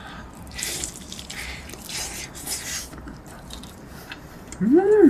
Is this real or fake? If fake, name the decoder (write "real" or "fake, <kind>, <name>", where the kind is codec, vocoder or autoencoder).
fake, vocoder, BigVGAN v2